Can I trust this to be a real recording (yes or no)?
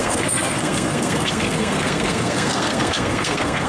no